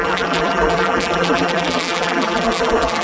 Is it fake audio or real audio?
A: fake